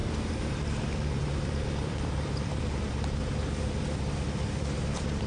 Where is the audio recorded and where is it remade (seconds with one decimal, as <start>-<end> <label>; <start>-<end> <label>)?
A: 0.0-5.3 remade